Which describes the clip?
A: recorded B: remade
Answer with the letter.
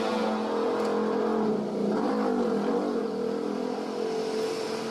A